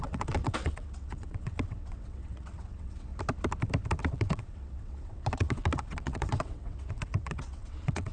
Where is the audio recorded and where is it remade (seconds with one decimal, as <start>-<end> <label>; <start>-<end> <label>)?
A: 0.0-3.1 remade; 3.1-4.1 recorded; 4.1-8.1 remade